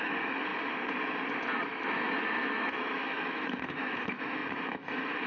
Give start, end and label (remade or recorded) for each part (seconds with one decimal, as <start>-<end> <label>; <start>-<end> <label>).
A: 0.0-0.5 remade; 0.5-1.7 recorded; 1.7-5.3 remade